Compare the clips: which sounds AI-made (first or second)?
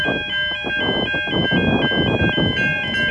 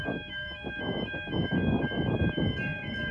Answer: second